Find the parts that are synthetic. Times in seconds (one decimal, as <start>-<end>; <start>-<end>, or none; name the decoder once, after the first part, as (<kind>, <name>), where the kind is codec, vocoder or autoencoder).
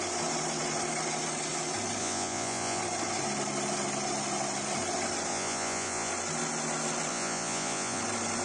2.0-2.8 (vocoder, Vocos); 5.3-6.1; 7.1-8.0